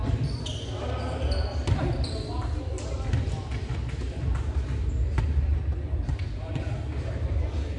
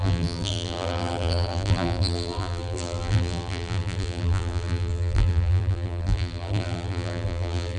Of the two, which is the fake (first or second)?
second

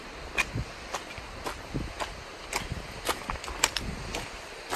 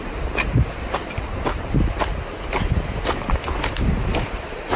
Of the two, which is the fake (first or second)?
second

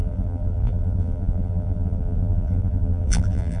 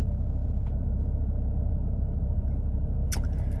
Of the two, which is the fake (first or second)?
first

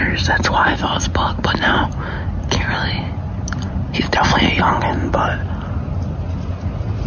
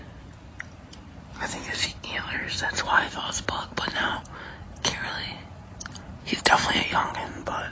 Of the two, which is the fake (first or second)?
second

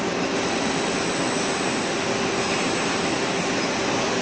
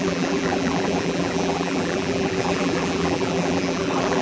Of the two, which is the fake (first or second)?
second